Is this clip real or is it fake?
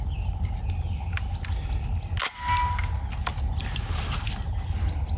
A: real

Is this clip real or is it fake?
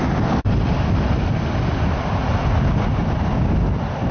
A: real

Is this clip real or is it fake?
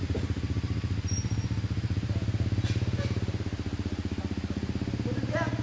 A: real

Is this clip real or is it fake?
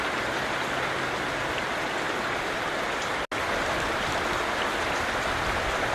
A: real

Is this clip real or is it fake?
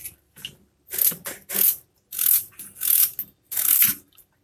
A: real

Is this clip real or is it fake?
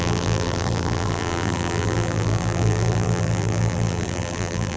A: fake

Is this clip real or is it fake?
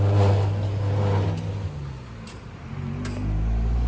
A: real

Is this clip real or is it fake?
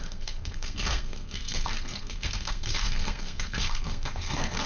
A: fake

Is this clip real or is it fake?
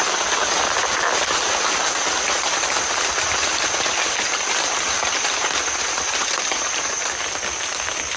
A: real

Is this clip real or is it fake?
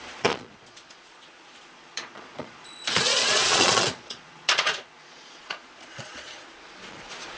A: fake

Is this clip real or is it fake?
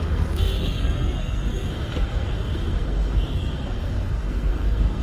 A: fake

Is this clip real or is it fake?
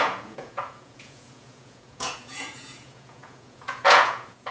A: fake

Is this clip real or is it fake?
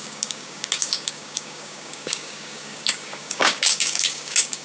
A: fake